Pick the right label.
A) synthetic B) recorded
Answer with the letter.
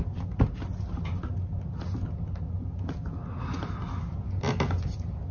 B